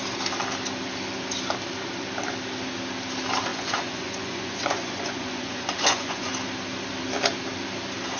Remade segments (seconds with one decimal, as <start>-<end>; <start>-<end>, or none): 3.5-6.3